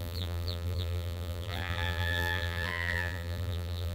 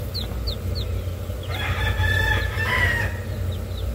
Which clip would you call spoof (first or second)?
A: first